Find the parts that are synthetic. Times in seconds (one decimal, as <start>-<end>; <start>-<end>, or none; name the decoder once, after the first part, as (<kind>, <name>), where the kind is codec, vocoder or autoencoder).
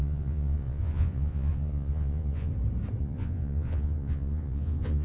0.0-2.5 (vocoder, Vocos); 3.0-5.0